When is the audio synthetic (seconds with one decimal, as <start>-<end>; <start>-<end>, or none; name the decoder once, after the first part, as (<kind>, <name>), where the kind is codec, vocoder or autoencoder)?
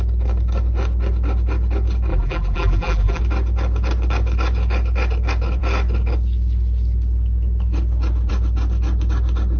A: 2.1-3.2 (vocoder, BigVGAN v2)